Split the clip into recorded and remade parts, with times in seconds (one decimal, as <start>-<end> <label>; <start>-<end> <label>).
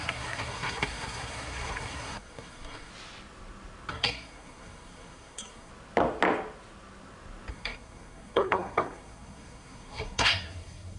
0.0-2.9 remade; 2.9-3.9 recorded; 3.9-5.7 remade; 5.7-7.5 recorded; 7.5-11.0 remade